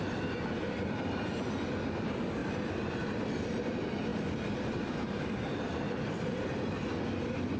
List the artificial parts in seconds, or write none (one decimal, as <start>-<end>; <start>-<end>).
2.4-3.3; 4.1-6.4